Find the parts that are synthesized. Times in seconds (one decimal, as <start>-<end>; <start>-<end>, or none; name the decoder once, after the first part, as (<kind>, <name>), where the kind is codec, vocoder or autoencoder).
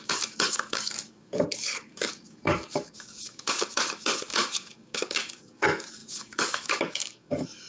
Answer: 0.0-7.7 (codec, DAC)